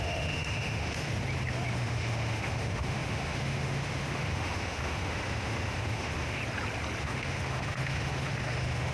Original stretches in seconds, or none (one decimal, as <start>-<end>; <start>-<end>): 1.1-1.7; 6.4-7.0